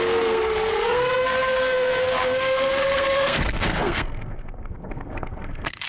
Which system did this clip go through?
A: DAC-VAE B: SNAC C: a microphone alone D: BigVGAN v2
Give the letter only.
B